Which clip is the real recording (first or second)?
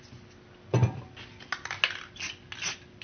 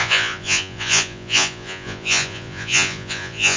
first